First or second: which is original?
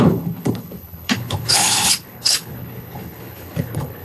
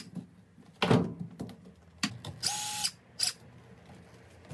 second